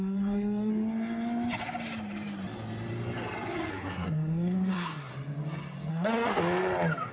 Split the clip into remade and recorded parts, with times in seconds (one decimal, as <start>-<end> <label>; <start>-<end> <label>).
0.0-0.7 remade; 0.7-3.7 recorded; 3.7-5.1 remade; 5.1-5.9 recorded; 5.9-6.4 remade; 6.4-7.1 recorded